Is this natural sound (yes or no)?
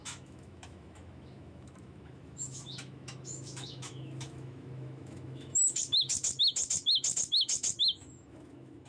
no